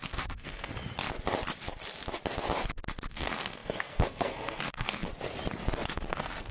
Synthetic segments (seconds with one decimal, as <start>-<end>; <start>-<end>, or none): 0.0-0.7; 3.1-5.1; 5.9-6.5